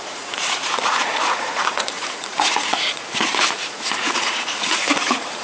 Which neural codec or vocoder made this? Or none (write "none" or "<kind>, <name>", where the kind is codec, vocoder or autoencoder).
vocoder, Vocos